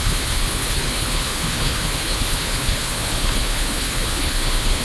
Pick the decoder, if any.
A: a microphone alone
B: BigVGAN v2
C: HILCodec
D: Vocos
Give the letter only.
C